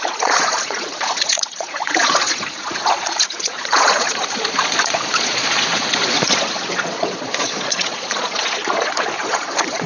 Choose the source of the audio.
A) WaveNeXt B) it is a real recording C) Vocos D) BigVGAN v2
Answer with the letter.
C